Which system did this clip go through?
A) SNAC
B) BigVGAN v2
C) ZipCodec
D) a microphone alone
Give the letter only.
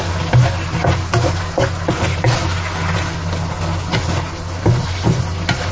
D